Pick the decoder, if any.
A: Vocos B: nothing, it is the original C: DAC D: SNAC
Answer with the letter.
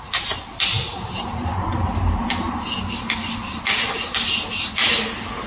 B